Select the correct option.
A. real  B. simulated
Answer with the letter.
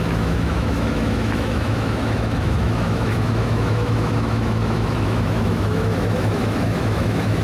B